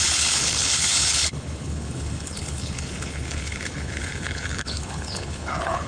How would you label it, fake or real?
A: fake